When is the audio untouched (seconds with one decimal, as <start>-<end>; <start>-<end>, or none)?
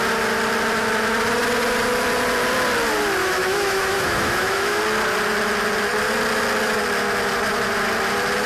0.0-3.2; 4.8-8.5